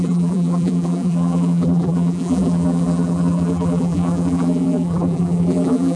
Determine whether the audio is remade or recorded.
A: remade